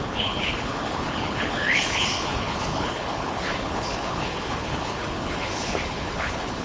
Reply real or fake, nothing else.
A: fake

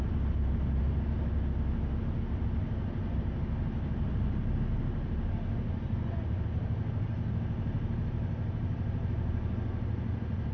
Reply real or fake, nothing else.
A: real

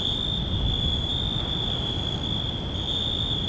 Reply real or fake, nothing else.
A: real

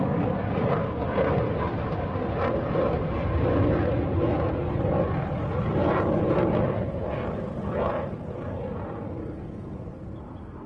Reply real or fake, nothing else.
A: real